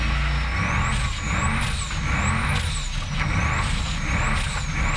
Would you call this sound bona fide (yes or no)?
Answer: yes